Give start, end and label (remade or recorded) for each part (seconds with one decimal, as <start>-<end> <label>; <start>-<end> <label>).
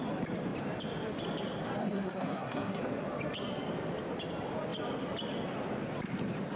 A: 0.0-1.8 recorded; 1.8-2.8 remade; 2.8-6.6 recorded